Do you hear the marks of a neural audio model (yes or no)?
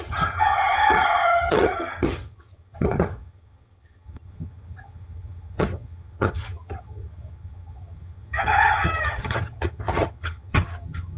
yes